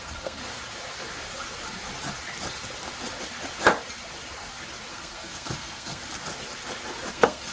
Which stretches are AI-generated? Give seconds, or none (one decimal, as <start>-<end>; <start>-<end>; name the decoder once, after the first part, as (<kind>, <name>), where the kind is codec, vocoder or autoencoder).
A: 0.0-0.4 (codec, SNAC); 4.9-6.0; 7.1-7.5

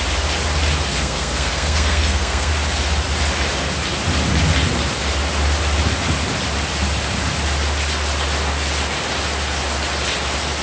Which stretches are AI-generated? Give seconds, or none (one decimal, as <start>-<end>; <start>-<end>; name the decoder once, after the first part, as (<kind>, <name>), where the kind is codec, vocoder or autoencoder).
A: 0.9-2.5 (codec, SNAC)

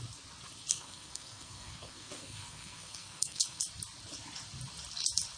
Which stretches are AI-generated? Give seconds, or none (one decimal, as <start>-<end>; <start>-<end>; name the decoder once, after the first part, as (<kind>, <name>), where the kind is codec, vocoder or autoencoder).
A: 0.7-3.6 (codec, SNAC)

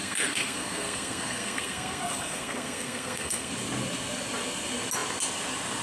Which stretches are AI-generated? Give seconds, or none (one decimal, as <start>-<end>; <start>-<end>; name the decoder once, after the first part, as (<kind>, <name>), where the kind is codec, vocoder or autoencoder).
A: 0.0-3.5 (codec, SNAC)

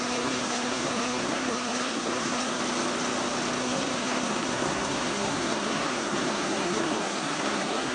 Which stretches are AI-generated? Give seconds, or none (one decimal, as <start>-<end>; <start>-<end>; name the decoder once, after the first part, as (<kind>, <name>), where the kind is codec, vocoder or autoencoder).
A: 0.0-2.6 (codec, SNAC); 3.6-7.9

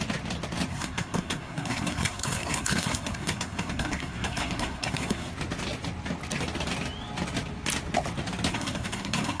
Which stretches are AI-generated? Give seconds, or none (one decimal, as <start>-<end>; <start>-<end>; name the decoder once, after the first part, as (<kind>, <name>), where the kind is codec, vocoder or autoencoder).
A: 0.7-5.3 (codec, SNAC); 8.5-9.4

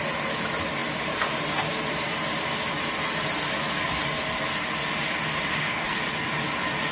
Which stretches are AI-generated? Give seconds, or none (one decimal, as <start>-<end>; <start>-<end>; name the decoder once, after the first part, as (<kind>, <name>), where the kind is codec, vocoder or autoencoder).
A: 5.5-6.0 (codec, SNAC)